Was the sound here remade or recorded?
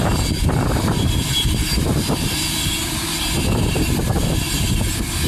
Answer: recorded